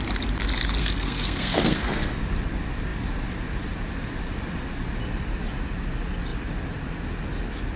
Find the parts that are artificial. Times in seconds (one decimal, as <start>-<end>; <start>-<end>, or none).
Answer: 0.8-2.2